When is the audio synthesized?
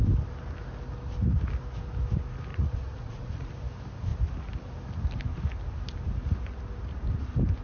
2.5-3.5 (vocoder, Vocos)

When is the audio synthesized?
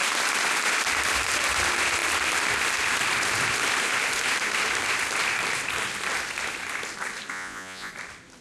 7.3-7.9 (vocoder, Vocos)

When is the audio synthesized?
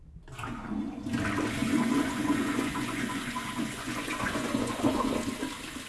0.5-1.0 (vocoder, Vocos); 1.6-5.1